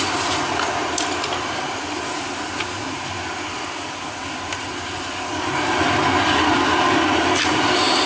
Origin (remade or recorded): recorded